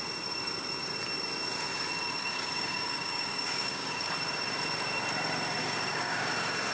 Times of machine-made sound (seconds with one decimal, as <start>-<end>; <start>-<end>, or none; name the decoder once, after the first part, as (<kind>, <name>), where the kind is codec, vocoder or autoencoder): 2.2-4.1 (codec, DAC); 5.6-6.3